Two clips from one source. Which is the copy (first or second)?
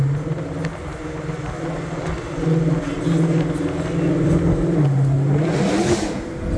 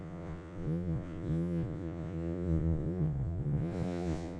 second